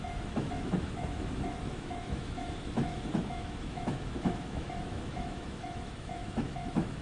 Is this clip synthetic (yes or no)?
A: yes